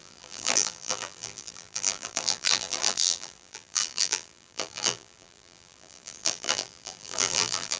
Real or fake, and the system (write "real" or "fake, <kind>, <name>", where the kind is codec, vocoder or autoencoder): fake, vocoder, BigVGAN v2